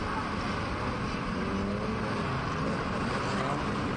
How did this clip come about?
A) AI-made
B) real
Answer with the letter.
B